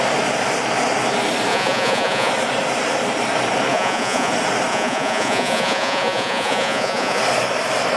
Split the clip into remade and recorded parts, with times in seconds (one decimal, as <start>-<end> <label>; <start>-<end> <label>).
0.0-1.5 recorded; 1.5-2.3 remade; 2.3-3.7 recorded; 3.7-4.3 remade; 4.3-4.7 recorded; 4.7-7.2 remade; 7.2-8.0 recorded